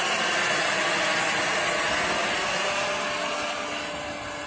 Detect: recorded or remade recorded